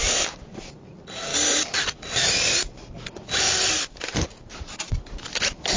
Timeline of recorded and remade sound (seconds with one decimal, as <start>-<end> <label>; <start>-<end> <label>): 0.0-5.8 recorded

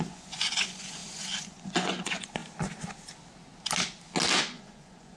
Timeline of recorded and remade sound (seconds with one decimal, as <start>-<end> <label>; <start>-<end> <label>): 0.0-2.4 remade; 2.4-4.4 recorded; 4.4-5.2 remade

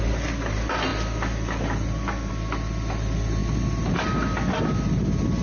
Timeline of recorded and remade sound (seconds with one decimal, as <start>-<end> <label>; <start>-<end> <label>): 0.0-5.4 recorded

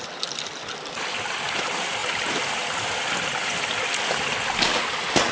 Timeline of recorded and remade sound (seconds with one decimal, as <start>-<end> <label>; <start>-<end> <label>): 0.0-5.3 recorded

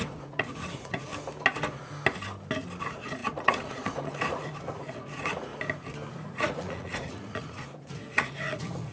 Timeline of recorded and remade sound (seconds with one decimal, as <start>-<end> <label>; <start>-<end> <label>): 0.0-1.1 remade; 1.1-2.8 recorded; 2.8-5.5 remade; 5.5-6.1 recorded; 6.1-8.9 remade

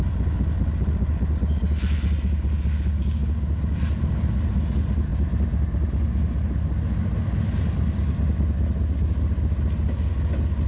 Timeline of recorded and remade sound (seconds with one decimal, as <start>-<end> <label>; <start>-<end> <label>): 0.0-10.7 recorded

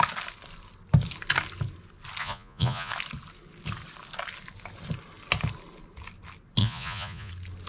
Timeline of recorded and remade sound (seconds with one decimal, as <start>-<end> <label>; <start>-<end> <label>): 0.0-2.2 recorded; 2.2-2.9 remade; 2.9-6.6 recorded; 6.6-7.3 remade; 7.3-7.7 recorded

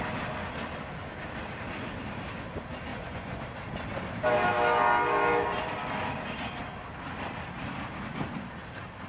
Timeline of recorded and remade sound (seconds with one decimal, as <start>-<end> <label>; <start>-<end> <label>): 0.0-2.9 recorded; 2.9-3.4 remade; 3.4-9.1 recorded